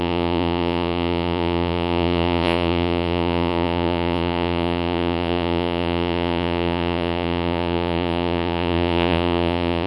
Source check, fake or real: fake